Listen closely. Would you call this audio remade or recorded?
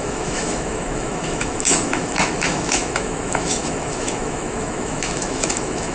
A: remade